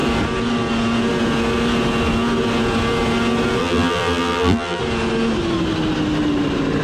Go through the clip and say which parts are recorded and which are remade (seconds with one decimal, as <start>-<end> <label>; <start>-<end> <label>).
0.0-3.6 recorded; 3.6-4.8 remade; 4.8-6.8 recorded